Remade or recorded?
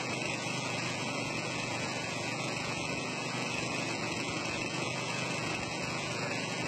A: remade